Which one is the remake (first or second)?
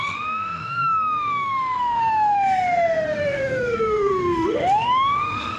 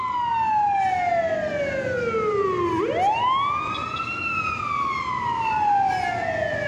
first